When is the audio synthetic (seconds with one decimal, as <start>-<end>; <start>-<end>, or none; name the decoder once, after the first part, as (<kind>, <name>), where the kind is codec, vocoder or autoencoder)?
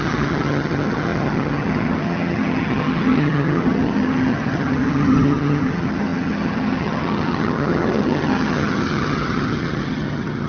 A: 0.0-10.5 (vocoder, HiFi-GAN)